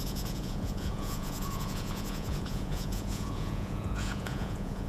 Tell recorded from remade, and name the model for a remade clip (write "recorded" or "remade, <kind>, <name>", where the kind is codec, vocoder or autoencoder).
remade, vocoder, Vocos